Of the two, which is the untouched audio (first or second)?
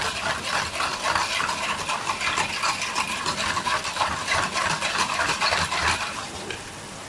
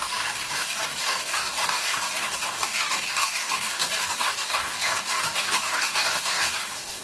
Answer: first